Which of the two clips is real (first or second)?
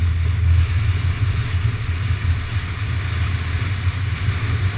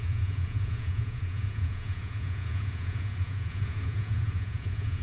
first